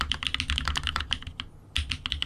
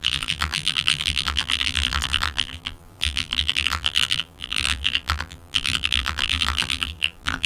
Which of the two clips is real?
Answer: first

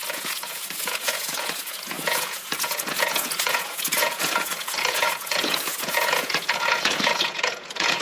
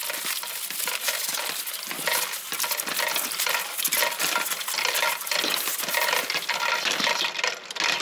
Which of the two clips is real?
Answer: second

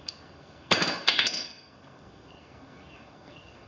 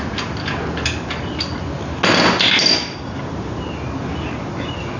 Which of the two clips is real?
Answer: second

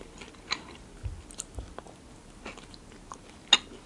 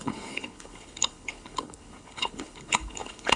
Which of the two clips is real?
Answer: first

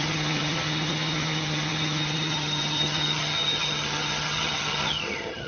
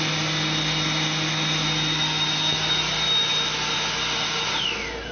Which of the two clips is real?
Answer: second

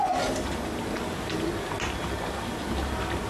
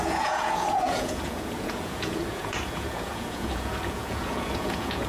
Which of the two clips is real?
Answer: first